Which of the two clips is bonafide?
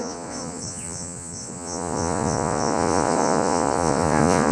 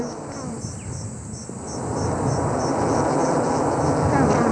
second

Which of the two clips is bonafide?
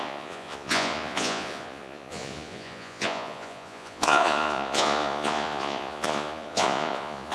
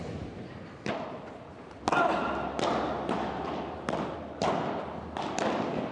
second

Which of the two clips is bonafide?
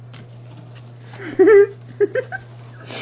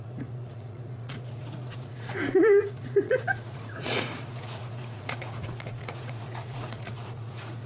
first